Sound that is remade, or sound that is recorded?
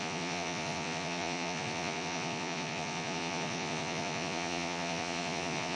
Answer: remade